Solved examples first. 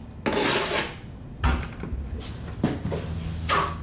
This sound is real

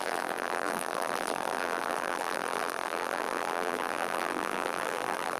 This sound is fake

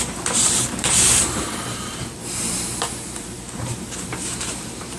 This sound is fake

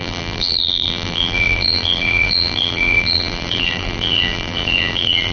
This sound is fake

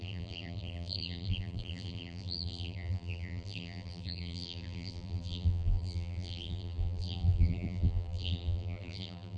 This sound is fake